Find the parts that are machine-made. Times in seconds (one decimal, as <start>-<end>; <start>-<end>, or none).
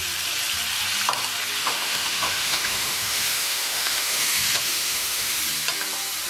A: 1.6-5.4